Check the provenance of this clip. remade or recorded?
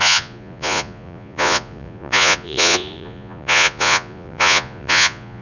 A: remade